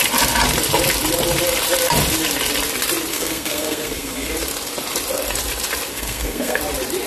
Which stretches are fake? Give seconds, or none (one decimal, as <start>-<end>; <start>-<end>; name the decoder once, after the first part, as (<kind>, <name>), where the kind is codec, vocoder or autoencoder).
3.1-4.3 (codec, SNAC); 5.9-6.6